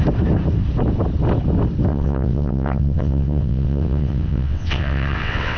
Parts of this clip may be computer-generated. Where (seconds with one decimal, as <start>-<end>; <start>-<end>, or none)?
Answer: 1.9-5.6